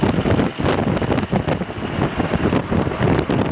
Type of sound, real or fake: real